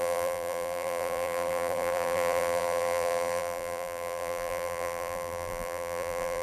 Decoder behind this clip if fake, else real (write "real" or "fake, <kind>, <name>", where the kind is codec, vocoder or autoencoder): fake, vocoder, BigVGAN v2